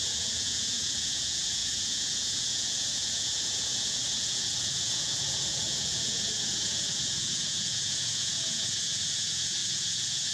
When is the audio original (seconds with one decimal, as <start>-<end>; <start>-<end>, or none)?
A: none